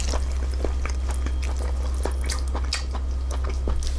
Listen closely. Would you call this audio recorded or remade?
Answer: recorded